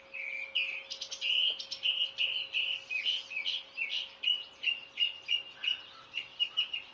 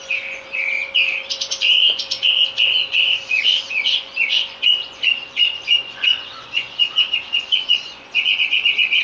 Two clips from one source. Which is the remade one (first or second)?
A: second